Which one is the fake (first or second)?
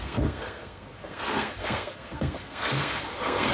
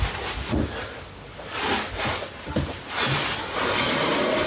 first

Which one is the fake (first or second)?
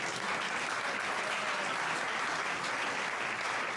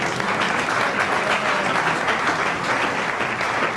first